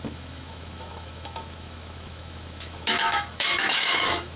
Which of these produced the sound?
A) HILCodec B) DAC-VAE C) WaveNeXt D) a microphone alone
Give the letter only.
B